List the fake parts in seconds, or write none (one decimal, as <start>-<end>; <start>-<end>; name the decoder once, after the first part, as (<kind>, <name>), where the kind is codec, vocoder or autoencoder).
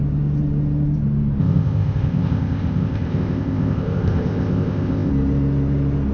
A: 1.4-5.1 (codec, ZipCodec)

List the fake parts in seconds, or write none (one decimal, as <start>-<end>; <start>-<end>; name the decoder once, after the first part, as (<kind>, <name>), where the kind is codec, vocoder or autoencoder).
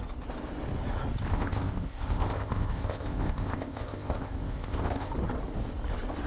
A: 1.3-5.1 (codec, ZipCodec)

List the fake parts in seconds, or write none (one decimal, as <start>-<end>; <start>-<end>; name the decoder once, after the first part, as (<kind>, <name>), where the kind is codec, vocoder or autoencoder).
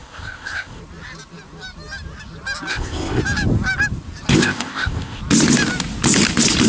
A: 0.0-0.8 (codec, ZipCodec); 2.7-3.2; 4.3-5.2